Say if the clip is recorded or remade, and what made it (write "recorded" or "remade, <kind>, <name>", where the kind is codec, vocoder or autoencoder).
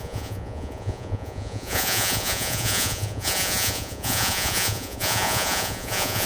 remade, vocoder, Vocos